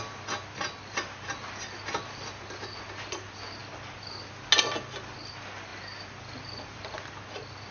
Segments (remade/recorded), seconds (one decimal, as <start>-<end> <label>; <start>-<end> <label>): 0.0-7.7 recorded